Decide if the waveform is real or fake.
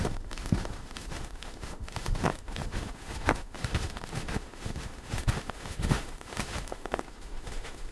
fake